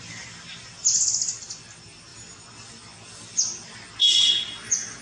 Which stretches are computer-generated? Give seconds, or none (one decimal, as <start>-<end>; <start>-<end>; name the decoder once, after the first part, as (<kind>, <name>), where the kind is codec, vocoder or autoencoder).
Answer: none